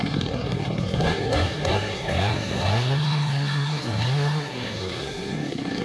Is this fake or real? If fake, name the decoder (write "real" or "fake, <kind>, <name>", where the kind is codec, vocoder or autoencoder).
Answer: fake, codec, SNAC